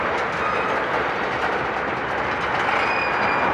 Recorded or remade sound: recorded